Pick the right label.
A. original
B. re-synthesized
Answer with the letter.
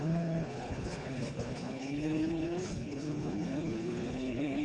B